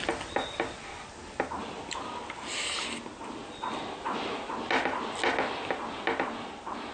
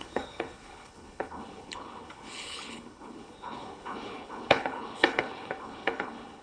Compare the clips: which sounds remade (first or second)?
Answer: second